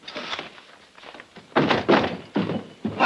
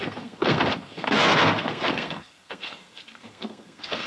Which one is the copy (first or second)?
second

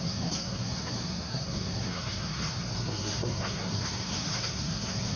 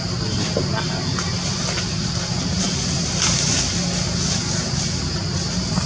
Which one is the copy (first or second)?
first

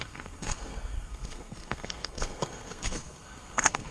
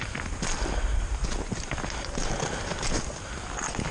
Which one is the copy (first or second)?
first